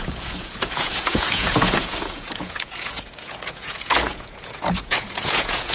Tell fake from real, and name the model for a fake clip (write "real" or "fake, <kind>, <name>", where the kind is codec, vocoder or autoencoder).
fake, vocoder, Vocos